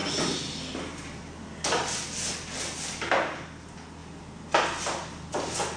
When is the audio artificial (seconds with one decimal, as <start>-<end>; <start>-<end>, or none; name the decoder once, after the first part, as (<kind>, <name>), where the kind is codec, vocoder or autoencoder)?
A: none